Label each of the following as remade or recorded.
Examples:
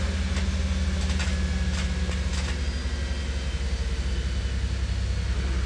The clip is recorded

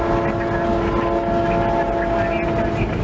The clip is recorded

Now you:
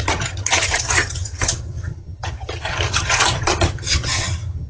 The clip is remade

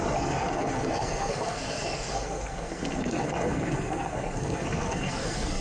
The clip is remade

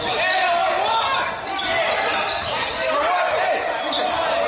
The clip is recorded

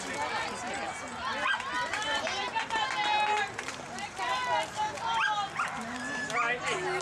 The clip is recorded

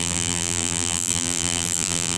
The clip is remade